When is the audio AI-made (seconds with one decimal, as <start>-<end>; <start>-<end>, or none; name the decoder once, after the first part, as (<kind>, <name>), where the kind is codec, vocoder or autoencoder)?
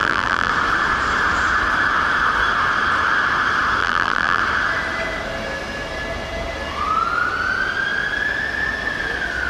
0.0-0.5 (vocoder, BigVGAN v2); 3.8-4.4